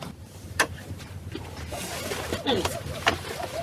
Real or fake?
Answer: fake